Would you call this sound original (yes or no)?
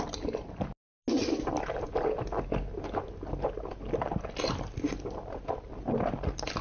yes